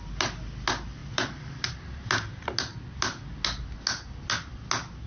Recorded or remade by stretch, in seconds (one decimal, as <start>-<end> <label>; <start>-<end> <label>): 0.0-5.1 recorded